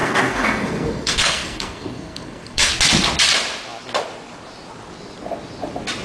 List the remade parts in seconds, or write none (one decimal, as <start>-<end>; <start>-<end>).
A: 0.0-2.7